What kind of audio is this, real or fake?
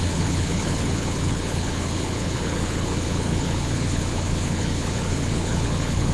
fake